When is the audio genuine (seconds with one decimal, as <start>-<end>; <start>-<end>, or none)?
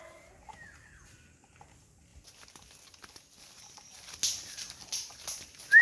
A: 0.0-5.8